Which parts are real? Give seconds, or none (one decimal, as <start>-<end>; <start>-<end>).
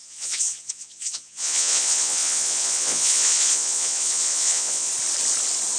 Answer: 4.9-5.8